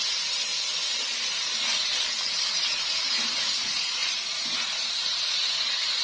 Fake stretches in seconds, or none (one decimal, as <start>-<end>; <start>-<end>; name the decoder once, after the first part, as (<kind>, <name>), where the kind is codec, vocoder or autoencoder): 0.0-0.5 (vocoder, BigVGAN v2); 1.2-6.0